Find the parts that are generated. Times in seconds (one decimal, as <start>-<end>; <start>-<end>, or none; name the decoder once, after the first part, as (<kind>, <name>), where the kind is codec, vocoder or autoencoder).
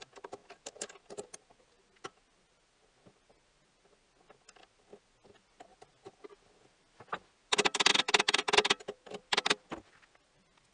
none